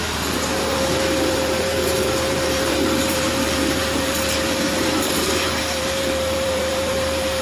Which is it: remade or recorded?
remade